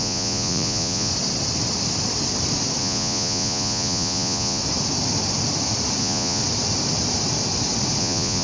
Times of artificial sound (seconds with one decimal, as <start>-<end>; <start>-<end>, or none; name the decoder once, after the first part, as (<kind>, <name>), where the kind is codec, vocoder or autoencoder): 0.0-1.1 (vocoder, Vocos); 2.8-4.6; 6.0-6.4; 8.0-8.4